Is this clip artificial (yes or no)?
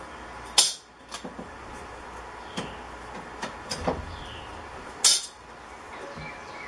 no